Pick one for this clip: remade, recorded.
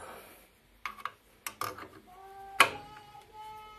recorded